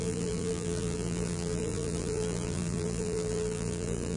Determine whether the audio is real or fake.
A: fake